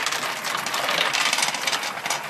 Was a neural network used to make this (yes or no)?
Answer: no